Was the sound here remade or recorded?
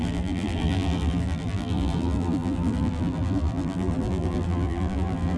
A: remade